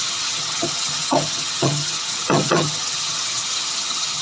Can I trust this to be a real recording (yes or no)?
no